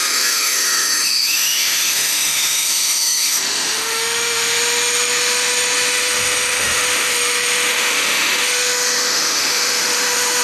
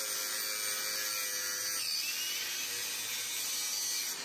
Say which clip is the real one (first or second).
second